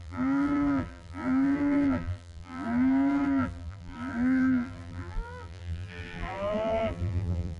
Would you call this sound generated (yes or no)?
yes